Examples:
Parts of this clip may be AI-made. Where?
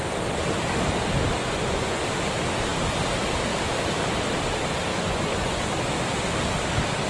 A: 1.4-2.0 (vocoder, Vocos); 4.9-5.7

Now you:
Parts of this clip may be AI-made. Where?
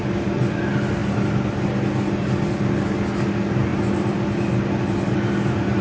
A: 3.7-5.8 (vocoder, BigVGAN v2)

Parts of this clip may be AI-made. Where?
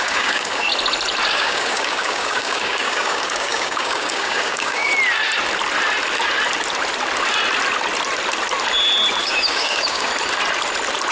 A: 0.0-0.7 (codec, DAC); 1.3-4.9; 9.2-10.1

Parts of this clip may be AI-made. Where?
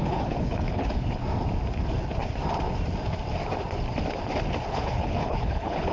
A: 0.0-1.2 (codec, HILCodec); 4.7-5.9